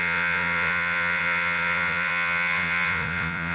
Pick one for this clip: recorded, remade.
remade